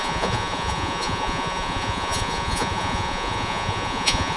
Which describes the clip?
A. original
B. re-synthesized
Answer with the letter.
B